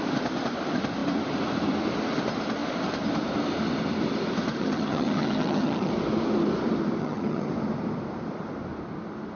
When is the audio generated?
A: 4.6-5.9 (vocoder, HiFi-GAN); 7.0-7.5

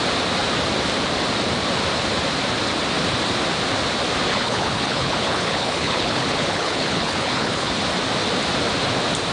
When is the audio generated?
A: 4.3-7.7 (codec, HILCodec)

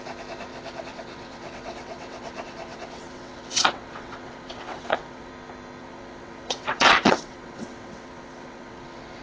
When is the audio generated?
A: 0.5-5.3 (vocoder, WaveNeXt); 5.8-9.2